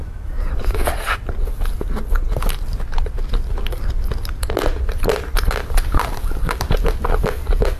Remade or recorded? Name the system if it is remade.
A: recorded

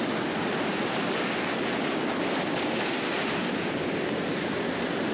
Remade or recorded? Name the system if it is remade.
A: recorded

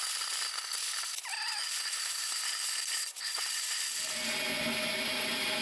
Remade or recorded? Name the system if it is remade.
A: recorded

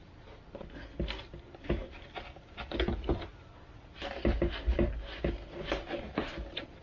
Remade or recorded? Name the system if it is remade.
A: recorded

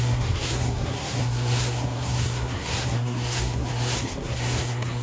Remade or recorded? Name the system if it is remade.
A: remade, codec, SNAC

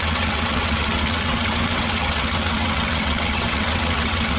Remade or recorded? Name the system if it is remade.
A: remade, vocoder, WaveNeXt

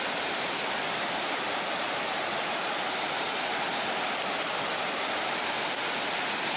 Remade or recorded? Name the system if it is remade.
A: recorded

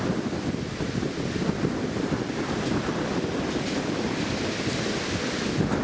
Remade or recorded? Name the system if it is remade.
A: recorded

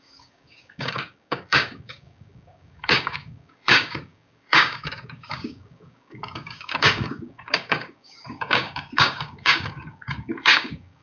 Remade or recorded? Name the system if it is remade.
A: remade, codec, DAC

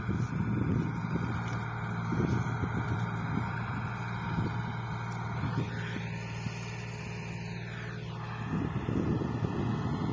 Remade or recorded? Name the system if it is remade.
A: recorded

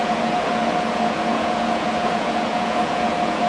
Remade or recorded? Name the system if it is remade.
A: remade, vocoder, Vocos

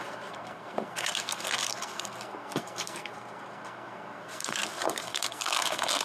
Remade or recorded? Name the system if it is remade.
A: remade, codec, SNAC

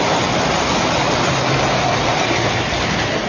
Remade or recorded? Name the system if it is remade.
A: recorded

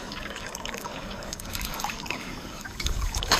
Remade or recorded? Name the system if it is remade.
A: remade, codec, DAC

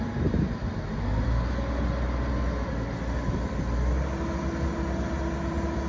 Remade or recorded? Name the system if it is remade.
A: recorded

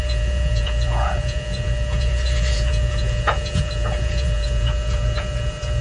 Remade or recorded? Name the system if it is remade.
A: remade, vocoder, Vocos